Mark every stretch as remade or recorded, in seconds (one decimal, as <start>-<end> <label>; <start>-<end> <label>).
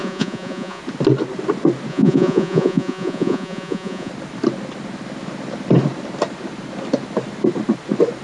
0.0-0.8 remade; 0.8-1.9 recorded; 1.9-4.1 remade; 4.1-8.2 recorded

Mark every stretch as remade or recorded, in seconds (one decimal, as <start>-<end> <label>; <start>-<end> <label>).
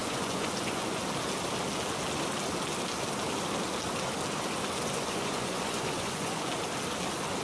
0.0-1.0 remade; 1.0-4.9 recorded; 4.9-6.5 remade; 6.5-7.4 recorded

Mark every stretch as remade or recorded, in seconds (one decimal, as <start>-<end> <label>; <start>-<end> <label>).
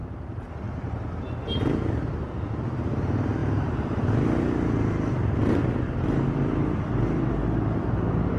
0.0-0.5 remade; 0.5-8.4 recorded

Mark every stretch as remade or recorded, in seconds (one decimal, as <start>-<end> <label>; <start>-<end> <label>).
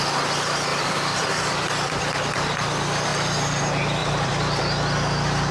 0.0-0.7 recorded; 0.7-2.2 remade; 2.2-4.0 recorded; 4.0-4.6 remade; 4.6-5.5 recorded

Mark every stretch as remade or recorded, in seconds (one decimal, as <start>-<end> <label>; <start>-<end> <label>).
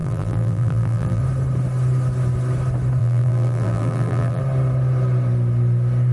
0.0-1.2 remade; 1.2-3.0 recorded; 3.0-4.4 remade; 4.4-6.1 recorded